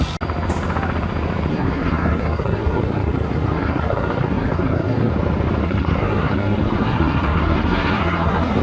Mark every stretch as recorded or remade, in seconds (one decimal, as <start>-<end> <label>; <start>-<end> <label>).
0.0-1.5 recorded; 1.5-5.1 remade; 5.1-5.6 recorded; 5.6-8.6 remade